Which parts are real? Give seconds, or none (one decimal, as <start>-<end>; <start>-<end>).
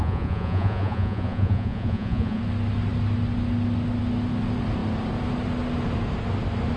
2.4-6.8